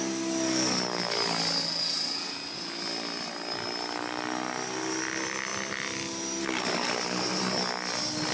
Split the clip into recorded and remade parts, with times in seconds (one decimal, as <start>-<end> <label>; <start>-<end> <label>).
0.0-8.3 recorded